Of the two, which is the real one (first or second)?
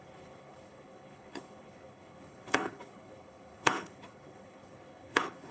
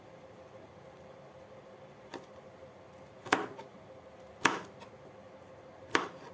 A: second